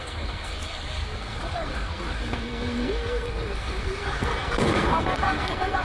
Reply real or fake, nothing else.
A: fake